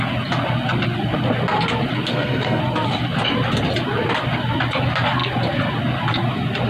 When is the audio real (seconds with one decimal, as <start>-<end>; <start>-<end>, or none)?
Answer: 0.0-2.1; 2.6-6.7